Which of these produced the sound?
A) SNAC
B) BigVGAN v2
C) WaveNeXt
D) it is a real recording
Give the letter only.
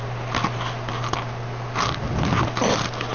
D